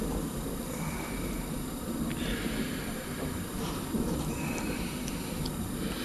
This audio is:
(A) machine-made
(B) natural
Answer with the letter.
B